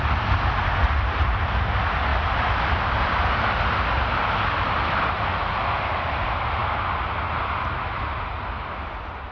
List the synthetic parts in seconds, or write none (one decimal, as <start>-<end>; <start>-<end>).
none